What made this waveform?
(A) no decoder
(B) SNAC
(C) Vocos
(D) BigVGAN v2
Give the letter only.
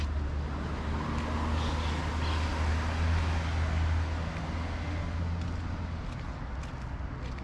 A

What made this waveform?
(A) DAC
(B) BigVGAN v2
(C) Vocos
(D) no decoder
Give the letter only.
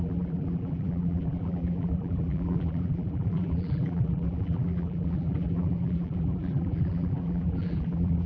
B